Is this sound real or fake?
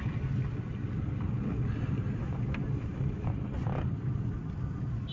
real